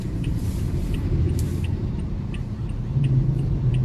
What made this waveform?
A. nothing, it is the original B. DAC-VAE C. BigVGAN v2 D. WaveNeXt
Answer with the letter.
C